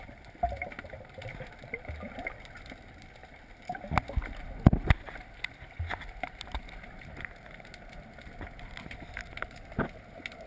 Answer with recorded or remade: recorded